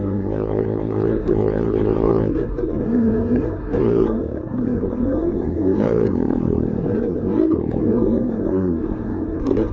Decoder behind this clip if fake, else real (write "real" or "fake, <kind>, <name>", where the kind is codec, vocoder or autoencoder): fake, codec, SNAC